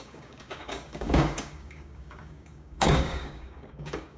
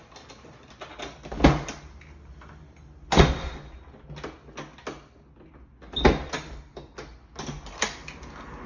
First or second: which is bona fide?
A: second